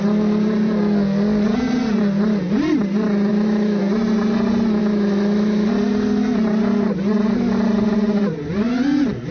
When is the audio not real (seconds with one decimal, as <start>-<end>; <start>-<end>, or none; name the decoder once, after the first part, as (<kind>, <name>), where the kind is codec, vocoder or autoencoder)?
3.3-3.8 (autoencoder, DAC-VAE); 4.8-5.7